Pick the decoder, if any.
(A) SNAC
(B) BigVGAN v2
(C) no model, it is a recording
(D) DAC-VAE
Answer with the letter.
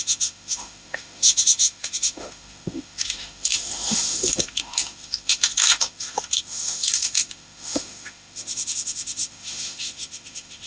D